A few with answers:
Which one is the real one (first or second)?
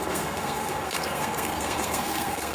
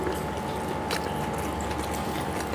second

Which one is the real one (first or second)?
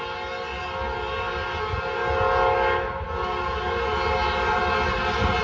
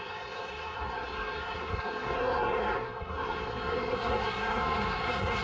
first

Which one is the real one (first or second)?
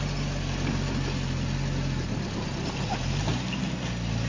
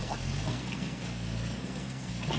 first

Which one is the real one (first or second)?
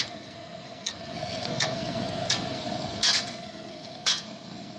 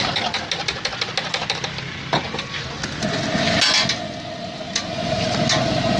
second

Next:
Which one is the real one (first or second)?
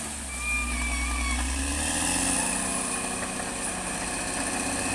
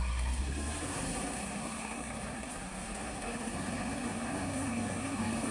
first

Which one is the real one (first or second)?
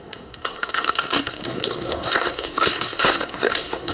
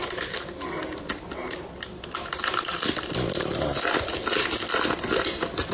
second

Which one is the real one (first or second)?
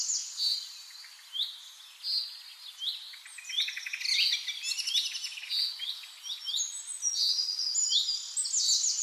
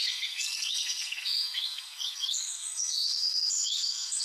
first